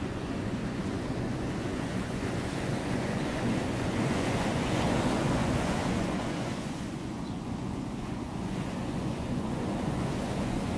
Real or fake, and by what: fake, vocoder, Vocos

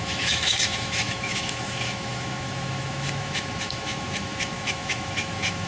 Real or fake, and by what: fake, autoencoder, DAC-VAE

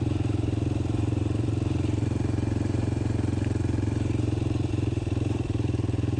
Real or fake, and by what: fake, vocoder, BigVGAN v2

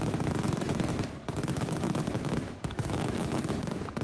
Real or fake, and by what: fake, autoencoder, DAC-VAE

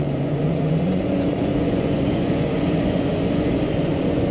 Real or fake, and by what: fake, vocoder, Vocos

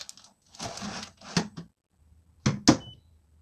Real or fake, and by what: real